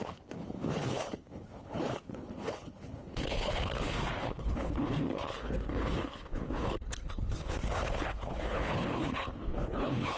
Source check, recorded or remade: remade